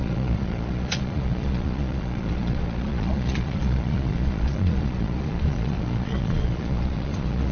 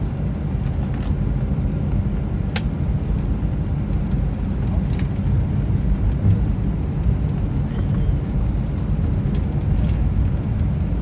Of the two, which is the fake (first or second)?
first